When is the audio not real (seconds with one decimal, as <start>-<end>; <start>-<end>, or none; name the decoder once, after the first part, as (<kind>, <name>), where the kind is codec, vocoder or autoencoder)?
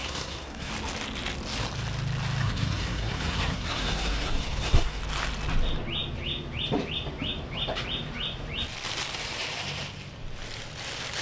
0.0-0.7 (codec, SNAC); 2.4-5.0